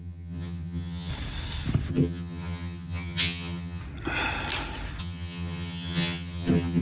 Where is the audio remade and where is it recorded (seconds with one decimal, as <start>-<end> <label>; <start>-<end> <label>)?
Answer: 0.0-1.1 remade; 1.1-1.9 recorded; 1.9-3.8 remade; 3.8-5.0 recorded; 5.0-6.8 remade